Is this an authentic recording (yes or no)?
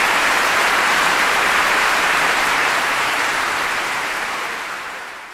no